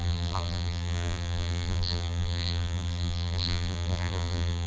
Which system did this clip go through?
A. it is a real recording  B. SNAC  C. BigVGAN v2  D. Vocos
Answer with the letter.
C